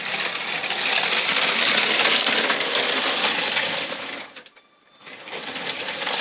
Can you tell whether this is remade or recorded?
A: recorded